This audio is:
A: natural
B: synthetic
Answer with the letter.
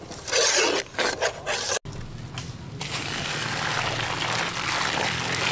A